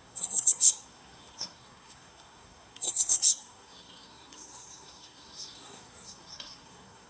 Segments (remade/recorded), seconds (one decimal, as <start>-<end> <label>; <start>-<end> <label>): 0.0-7.1 remade